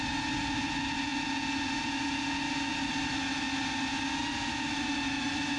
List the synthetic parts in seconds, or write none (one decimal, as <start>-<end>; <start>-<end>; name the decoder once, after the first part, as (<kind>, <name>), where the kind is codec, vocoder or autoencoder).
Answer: none